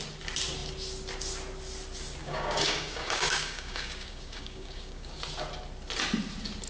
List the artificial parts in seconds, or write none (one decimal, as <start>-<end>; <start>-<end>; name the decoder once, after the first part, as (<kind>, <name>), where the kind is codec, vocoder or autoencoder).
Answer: 2.2-5.2 (codec, DAC)